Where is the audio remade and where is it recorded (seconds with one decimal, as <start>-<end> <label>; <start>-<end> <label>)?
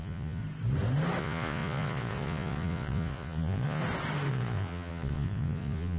0.0-0.4 remade; 0.4-1.2 recorded; 1.2-3.8 remade; 3.8-4.3 recorded; 4.3-6.0 remade